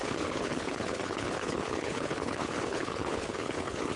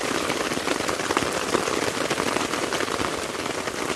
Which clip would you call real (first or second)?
second